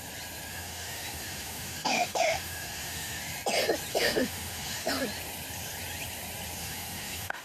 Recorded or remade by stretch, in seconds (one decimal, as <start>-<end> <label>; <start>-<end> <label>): 0.0-0.5 recorded; 0.5-3.2 remade; 3.2-3.9 recorded; 3.9-4.9 remade; 4.9-6.6 recorded; 6.6-7.4 remade